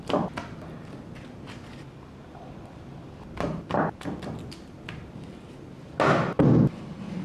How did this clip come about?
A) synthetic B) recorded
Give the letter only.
B